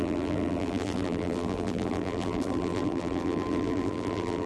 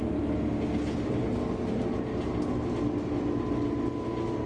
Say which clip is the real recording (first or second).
second